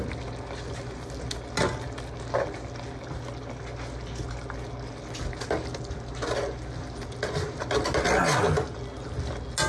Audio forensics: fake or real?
real